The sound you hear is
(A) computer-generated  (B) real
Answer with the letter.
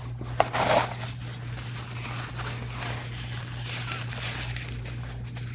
B